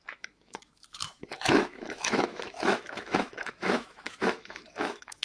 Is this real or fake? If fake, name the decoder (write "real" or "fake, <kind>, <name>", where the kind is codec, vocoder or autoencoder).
fake, autoencoder, DAC-VAE